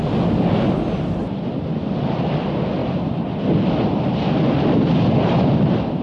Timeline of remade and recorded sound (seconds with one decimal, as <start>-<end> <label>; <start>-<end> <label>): 0.0-6.0 recorded